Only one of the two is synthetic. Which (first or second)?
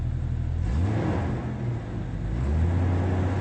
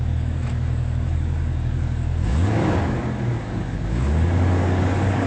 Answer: second